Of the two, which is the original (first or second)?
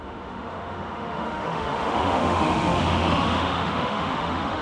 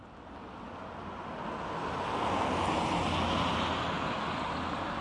second